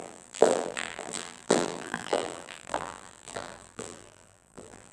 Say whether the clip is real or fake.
fake